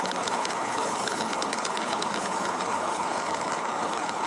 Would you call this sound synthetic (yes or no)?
yes